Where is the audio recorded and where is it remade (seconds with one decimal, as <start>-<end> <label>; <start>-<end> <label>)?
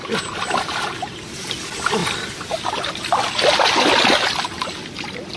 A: 0.0-5.4 recorded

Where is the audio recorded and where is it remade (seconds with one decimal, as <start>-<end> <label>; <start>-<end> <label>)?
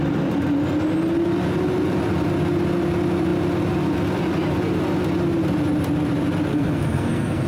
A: 0.0-6.5 recorded; 6.5-7.5 remade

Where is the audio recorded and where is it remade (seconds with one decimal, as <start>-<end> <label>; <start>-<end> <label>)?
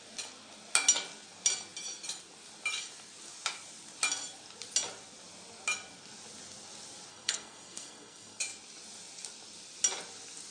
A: 0.0-7.1 recorded; 7.1-8.4 remade; 8.4-10.5 recorded